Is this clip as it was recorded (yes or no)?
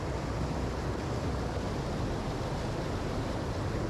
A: yes